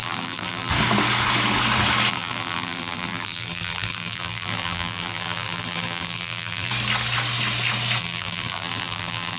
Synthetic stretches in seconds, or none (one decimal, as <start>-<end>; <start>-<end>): 0.0-0.7; 2.1-6.7; 8.0-9.4